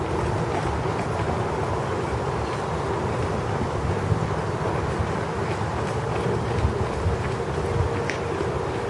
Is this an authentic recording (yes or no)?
yes